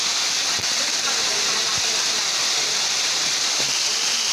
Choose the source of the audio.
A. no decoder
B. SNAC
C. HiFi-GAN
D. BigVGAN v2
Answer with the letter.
D